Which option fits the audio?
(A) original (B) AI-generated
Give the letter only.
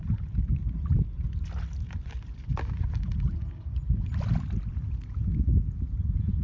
A